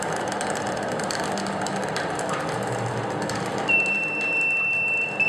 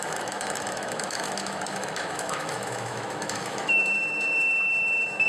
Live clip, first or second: first